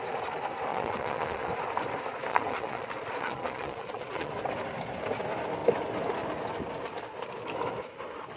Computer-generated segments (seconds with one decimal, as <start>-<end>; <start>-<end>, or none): 0.7-1.5; 2.3-4.3